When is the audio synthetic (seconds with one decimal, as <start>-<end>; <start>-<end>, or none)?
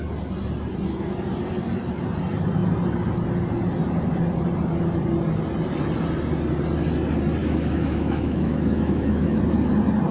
7.4-9.4